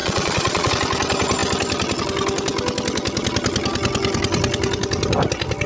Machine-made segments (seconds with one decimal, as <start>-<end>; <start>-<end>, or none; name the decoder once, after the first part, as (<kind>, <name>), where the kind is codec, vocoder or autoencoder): 0.0-0.7 (vocoder, Vocos)